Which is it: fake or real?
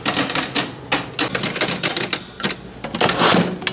real